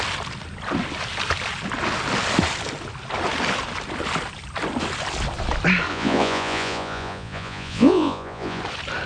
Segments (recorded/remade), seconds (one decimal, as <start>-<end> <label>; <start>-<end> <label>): 0.0-5.9 recorded; 5.9-8.6 remade; 8.6-9.1 recorded